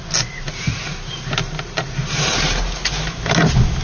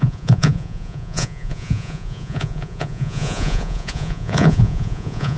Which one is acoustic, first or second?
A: first